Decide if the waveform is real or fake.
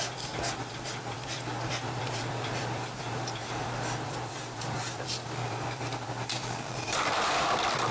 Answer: fake